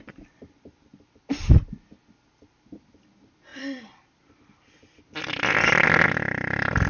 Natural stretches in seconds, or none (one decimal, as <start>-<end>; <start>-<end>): 0.0-0.9; 1.8-3.5; 5.9-6.9